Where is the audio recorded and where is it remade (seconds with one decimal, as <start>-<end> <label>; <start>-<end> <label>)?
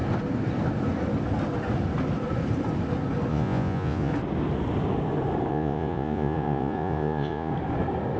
0.0-3.3 recorded; 3.3-4.1 remade; 4.1-5.5 recorded; 5.5-7.5 remade; 7.5-8.2 recorded